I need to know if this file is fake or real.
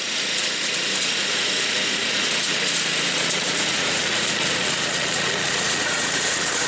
fake